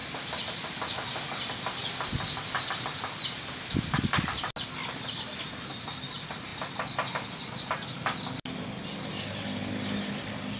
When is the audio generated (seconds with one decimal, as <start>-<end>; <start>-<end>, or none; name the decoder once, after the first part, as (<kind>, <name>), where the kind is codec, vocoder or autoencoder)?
none